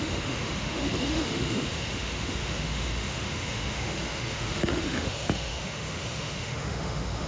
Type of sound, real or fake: fake